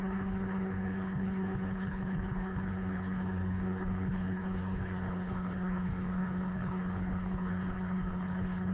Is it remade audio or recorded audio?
remade